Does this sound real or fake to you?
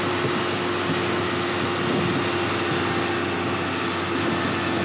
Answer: real